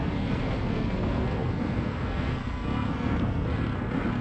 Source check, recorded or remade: remade